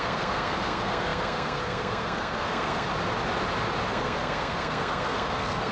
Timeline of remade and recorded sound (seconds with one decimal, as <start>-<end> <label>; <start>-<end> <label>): 0.0-2.9 remade; 2.9-3.9 recorded; 3.9-5.7 remade